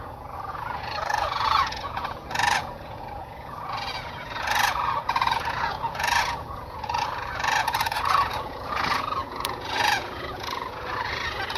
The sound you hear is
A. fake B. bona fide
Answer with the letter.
A